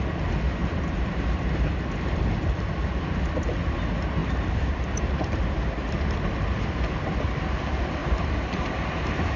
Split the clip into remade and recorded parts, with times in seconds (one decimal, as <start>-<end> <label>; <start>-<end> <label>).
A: 0.0-0.6 recorded; 0.6-1.4 remade; 1.4-4.2 recorded; 4.2-6.0 remade; 6.0-8.0 recorded; 8.0-9.4 remade